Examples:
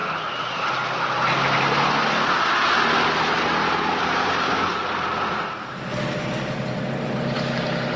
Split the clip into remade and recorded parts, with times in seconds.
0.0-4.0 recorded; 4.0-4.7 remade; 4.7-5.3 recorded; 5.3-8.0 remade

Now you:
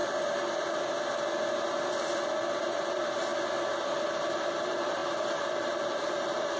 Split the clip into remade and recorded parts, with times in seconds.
0.0-2.6 recorded; 2.6-3.3 remade; 3.3-4.0 recorded; 4.0-6.6 remade

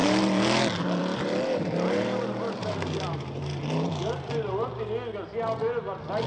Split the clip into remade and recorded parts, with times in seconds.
0.0-0.6 remade; 0.6-1.0 recorded; 1.0-4.8 remade; 4.8-6.3 recorded

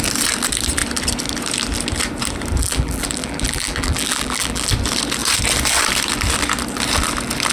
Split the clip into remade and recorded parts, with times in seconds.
0.0-2.6 recorded; 2.6-4.7 remade; 4.7-7.5 recorded

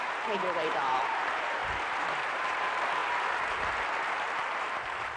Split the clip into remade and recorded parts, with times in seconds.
0.0-1.6 remade; 1.6-2.3 recorded; 2.3-3.0 remade; 3.0-4.1 recorded; 4.1-5.2 remade

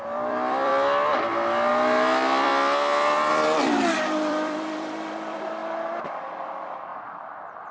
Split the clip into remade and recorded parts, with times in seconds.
0.0-0.7 remade; 0.7-1.7 recorded; 1.7-2.5 remade; 2.5-3.3 recorded; 3.3-5.6 remade; 5.6-6.2 recorded; 6.2-6.9 remade; 6.9-7.7 recorded

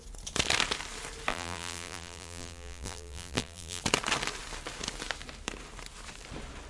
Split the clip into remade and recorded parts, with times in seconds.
0.0-1.3 recorded; 1.3-3.8 remade; 3.8-6.7 recorded